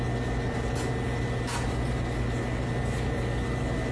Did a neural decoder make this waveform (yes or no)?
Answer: no